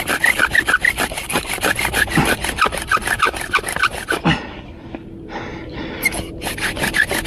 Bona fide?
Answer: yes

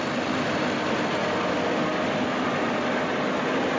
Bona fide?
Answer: yes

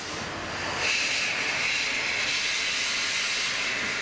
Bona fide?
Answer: yes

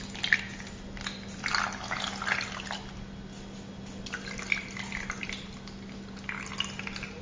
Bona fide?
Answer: yes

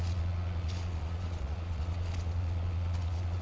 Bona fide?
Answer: no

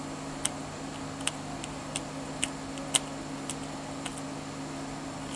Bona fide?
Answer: yes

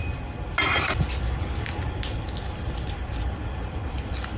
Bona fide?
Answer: yes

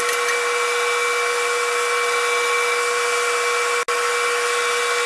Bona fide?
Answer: yes